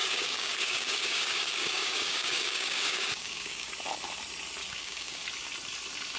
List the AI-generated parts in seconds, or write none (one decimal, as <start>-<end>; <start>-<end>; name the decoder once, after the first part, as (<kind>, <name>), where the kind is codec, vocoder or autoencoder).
0.0-3.7 (codec, DAC); 4.6-5.2